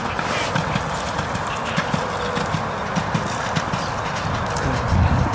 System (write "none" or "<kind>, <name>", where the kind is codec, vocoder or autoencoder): none